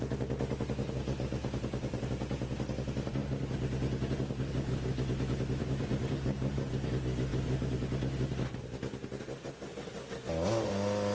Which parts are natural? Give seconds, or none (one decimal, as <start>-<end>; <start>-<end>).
0.0-1.4; 2.1-5.6; 6.7-11.1